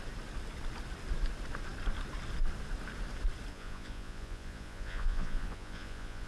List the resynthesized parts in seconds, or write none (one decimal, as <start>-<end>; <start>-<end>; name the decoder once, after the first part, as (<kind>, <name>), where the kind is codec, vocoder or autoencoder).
3.5-6.3 (vocoder, Vocos)